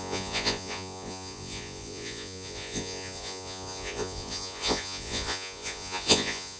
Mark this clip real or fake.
fake